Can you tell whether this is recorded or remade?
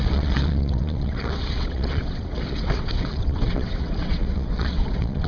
remade